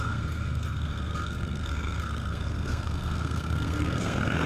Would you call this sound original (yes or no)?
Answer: no